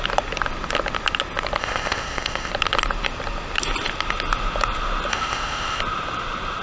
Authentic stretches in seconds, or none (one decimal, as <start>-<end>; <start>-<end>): 0.0-1.6; 2.5-5.1; 5.8-6.6